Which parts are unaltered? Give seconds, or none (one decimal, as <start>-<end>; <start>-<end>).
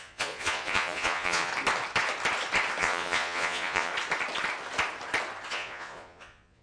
1.5-2.8; 3.9-5.5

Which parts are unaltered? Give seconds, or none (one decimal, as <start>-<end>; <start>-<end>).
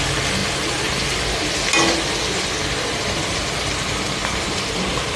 0.0-0.4; 0.9-4.2